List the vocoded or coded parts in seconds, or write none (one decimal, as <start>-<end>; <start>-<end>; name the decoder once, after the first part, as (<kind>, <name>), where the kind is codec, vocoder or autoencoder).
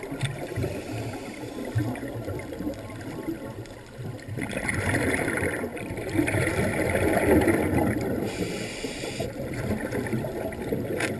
0.0-9.8 (vocoder, BigVGAN v2)